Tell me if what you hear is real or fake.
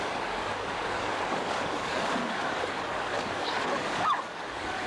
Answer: fake